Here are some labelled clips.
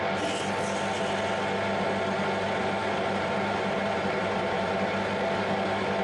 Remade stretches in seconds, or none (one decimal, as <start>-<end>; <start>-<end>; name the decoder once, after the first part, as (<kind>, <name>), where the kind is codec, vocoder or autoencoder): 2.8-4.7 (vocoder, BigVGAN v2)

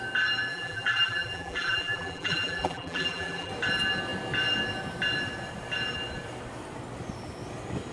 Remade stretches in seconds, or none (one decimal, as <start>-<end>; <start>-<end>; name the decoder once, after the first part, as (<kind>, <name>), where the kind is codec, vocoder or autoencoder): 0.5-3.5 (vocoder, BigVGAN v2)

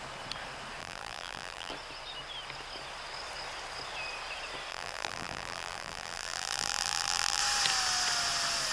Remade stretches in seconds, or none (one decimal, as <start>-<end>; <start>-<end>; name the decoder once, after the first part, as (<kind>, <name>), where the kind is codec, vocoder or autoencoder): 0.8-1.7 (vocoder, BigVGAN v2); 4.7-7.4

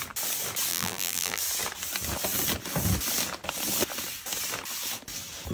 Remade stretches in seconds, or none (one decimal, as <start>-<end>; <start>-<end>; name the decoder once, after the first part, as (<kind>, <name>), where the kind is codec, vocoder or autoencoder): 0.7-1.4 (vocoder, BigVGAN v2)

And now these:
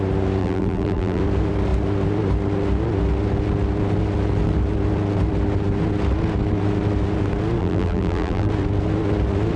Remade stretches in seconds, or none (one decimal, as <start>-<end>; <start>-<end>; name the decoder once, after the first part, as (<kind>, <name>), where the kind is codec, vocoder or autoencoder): 0.4-1.2 (vocoder, BigVGAN v2); 7.6-8.5

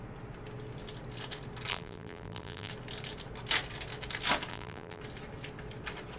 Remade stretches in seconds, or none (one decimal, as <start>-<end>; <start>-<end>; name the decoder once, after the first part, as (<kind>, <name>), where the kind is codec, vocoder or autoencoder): 1.7-2.7 (vocoder, BigVGAN v2); 4.5-5.0

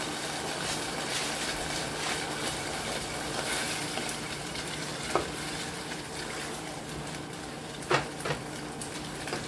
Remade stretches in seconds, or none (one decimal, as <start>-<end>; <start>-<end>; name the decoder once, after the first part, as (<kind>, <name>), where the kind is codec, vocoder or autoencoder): 0.0-4.9 (vocoder, BigVGAN v2); 5.6-9.5

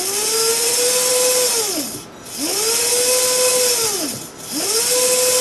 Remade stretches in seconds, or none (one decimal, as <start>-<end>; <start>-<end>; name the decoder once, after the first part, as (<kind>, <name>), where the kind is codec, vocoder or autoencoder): none